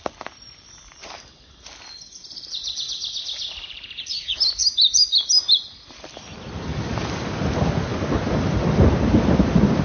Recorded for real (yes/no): no